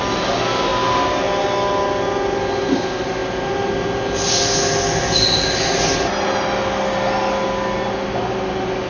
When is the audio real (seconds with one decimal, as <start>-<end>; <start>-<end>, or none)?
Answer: 0.0-8.9